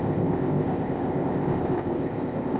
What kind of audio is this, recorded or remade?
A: remade